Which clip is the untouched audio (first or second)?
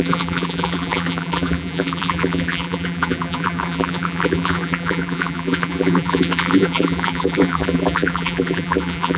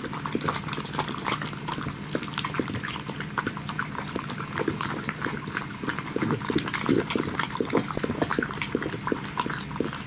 second